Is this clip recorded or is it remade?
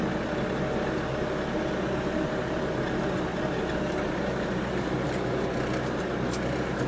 recorded